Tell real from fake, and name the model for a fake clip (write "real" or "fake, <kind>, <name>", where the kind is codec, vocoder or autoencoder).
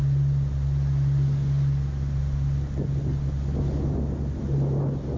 real